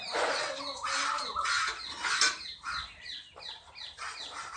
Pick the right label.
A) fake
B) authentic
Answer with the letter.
B